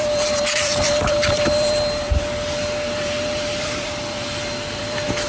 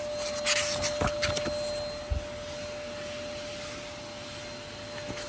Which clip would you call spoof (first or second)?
first